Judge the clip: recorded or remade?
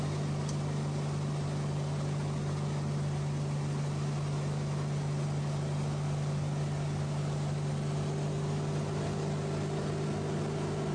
recorded